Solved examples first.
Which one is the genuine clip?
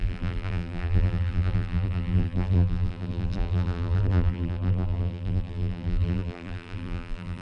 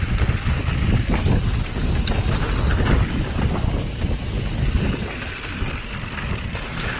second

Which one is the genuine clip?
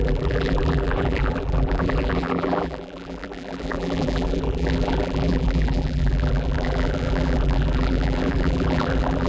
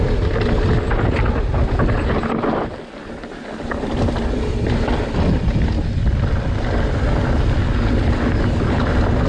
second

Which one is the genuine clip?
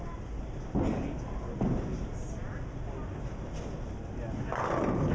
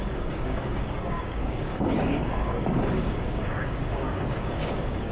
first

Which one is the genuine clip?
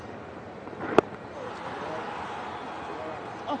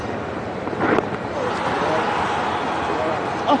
first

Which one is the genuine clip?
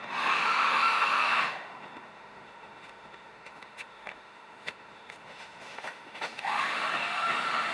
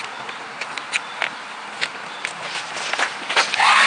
second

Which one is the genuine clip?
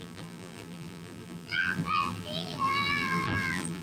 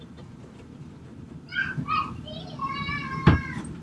second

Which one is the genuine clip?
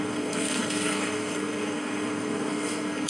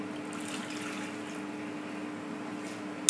second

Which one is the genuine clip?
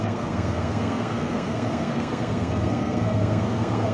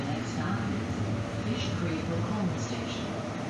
second